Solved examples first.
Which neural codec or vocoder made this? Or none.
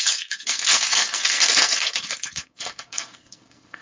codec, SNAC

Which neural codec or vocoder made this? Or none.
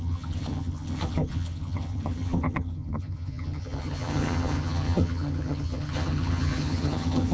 vocoder, HiFi-GAN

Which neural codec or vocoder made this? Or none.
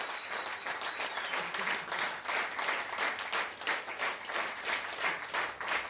none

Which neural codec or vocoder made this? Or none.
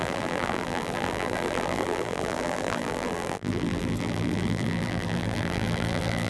vocoder, BigVGAN v2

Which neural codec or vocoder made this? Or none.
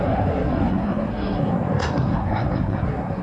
codec, SNAC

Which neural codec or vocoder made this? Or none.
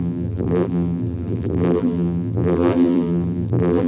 vocoder, BigVGAN v2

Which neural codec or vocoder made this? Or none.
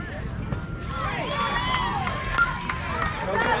none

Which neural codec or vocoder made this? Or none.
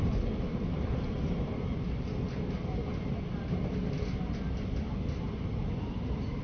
none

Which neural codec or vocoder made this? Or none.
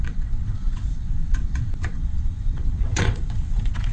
vocoder, WaveNeXt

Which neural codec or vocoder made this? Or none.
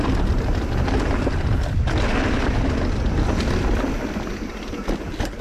none